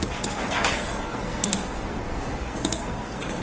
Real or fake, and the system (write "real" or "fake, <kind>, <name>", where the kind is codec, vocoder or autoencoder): fake, codec, SNAC